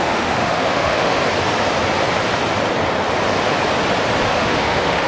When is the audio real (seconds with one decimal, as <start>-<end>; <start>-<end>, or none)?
1.2-4.3